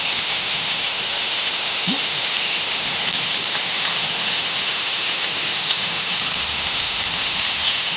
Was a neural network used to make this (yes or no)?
yes